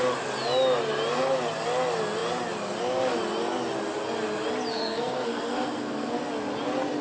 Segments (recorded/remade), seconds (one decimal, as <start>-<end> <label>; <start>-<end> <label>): 0.0-4.7 recorded; 4.7-6.2 remade; 6.2-7.0 recorded